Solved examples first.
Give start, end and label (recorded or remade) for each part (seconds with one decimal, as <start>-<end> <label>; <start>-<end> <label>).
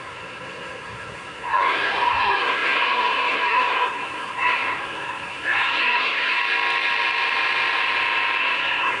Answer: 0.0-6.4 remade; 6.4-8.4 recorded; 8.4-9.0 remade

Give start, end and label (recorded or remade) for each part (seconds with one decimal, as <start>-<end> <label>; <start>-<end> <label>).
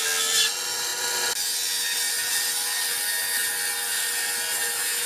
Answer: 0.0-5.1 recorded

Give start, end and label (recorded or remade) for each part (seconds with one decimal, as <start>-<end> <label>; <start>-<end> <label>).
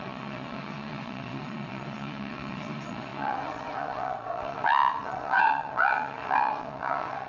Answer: 0.0-7.3 remade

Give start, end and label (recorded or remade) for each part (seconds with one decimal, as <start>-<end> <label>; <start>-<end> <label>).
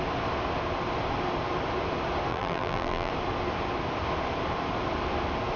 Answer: 0.0-2.3 recorded; 2.3-3.1 remade; 3.1-5.6 recorded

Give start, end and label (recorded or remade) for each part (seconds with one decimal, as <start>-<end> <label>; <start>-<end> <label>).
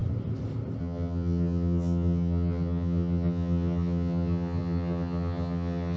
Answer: 0.0-0.8 recorded; 0.8-6.0 remade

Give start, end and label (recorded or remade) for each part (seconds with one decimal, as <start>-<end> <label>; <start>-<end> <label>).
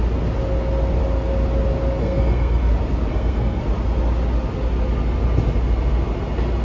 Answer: 0.0-2.0 recorded; 2.0-2.7 remade; 2.7-3.1 recorded; 3.1-3.6 remade; 3.6-6.6 recorded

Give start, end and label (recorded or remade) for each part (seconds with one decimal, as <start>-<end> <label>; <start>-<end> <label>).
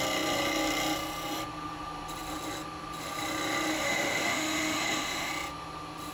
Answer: 0.0-3.7 recorded; 3.7-5.3 remade; 5.3-6.1 recorded